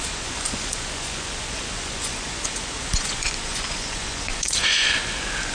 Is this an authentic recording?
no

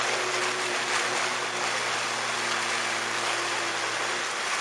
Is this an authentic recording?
yes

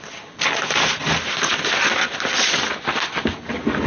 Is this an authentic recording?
yes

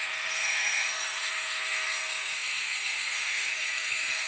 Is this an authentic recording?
no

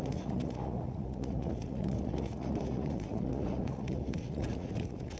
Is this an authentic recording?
no